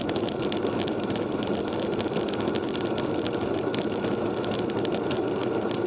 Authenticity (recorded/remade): recorded